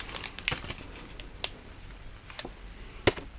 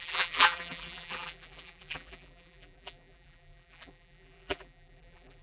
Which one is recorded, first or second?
first